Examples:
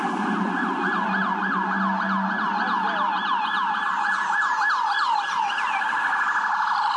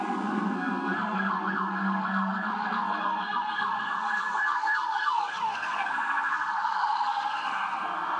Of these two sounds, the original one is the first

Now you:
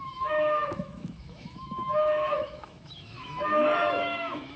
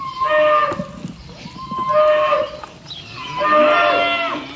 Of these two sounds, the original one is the second